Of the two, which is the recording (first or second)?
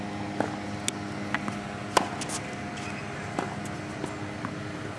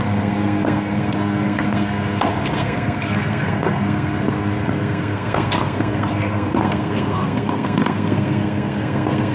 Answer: first